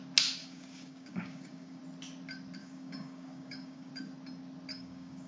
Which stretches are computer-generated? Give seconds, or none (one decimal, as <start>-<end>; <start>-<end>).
0.4-1.8; 2.6-3.9; 4.7-5.3